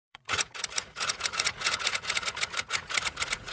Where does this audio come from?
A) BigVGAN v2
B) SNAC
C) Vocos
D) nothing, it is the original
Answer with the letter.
C